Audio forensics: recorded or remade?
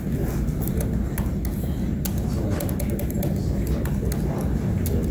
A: recorded